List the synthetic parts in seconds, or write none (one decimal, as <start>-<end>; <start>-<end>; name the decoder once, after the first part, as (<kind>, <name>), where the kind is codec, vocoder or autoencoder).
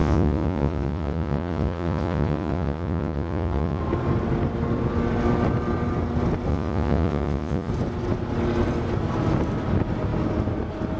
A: 0.0-3.8 (vocoder, Vocos); 6.5-7.7